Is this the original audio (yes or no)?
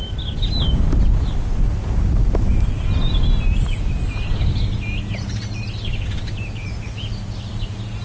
yes